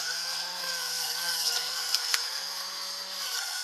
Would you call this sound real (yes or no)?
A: no